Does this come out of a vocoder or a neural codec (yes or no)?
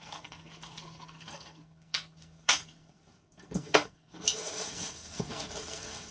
yes